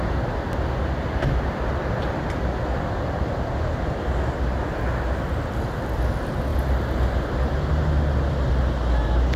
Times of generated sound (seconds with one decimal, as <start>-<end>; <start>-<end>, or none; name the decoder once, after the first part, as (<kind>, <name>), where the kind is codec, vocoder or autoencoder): none